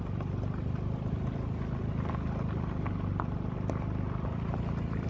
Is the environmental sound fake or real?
real